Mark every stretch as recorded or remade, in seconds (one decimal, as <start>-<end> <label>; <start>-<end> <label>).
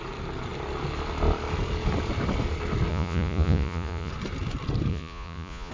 0.0-2.9 recorded; 2.9-4.1 remade; 4.1-4.9 recorded; 4.9-5.7 remade